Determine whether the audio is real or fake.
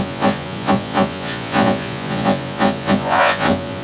fake